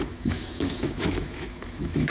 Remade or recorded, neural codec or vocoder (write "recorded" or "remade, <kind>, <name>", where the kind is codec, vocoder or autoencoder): remade, autoencoder, DAC-VAE